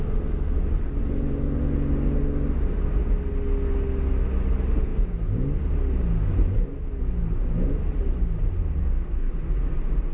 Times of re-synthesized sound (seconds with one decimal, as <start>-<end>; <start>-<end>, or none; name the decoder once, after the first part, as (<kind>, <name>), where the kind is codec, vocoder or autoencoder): 8.8-9.3 (codec, SNAC)